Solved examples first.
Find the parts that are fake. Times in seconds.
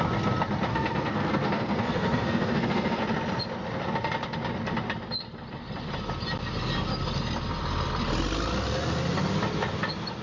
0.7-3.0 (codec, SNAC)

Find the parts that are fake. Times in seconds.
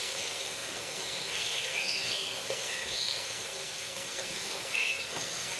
0.0-5.6 (codec, SNAC)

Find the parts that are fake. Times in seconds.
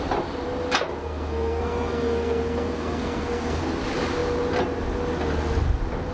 1.0-3.6 (codec, SNAC)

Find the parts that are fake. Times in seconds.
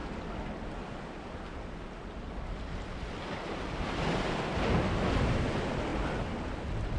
none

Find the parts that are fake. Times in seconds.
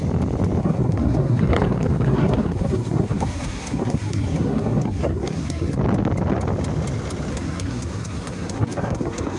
0.6-5.8 (codec, SNAC); 7.3-9.4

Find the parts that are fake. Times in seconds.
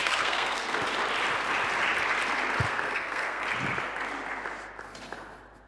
0.0-0.8 (codec, SNAC); 2.7-3.4